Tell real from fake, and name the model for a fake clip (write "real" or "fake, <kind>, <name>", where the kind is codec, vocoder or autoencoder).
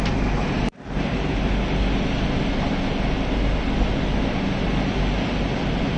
real